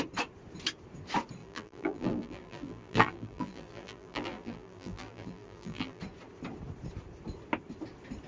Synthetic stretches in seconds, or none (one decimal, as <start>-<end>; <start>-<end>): 1.4-6.0